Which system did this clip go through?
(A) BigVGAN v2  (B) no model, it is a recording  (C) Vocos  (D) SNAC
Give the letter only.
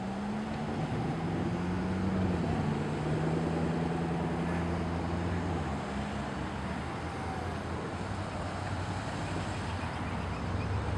B